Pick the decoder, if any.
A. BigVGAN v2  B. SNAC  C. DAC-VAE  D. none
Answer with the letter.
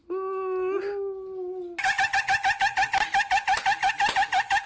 D